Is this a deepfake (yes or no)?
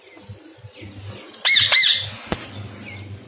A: no